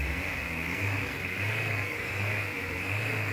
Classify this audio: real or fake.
fake